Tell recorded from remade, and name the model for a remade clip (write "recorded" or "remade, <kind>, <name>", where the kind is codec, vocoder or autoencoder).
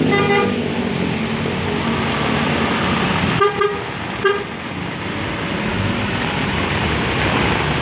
recorded